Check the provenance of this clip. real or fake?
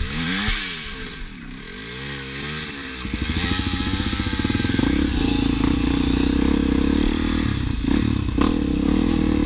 real